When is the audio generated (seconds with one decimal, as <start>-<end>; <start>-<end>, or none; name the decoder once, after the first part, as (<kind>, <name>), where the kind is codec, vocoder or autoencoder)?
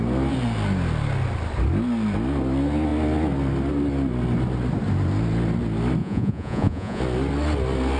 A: 6.0-7.0 (vocoder, Vocos)